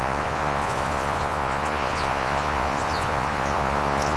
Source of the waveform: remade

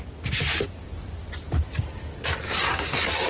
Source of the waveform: recorded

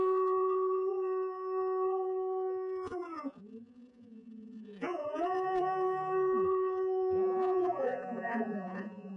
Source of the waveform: remade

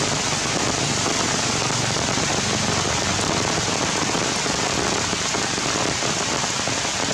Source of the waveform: recorded